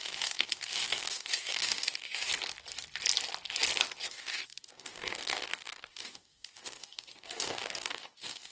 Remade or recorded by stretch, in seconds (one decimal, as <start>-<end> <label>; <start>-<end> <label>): 0.0-2.3 remade; 2.3-4.1 recorded; 4.1-8.5 remade